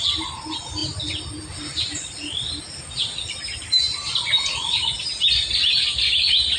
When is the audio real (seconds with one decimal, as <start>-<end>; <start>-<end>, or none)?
0.0-6.6